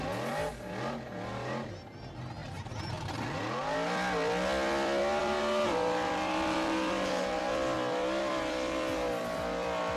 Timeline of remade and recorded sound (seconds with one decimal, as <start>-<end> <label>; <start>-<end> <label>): 0.0-2.4 recorded; 2.4-2.9 remade; 2.9-5.2 recorded; 5.2-7.4 remade; 7.4-10.0 recorded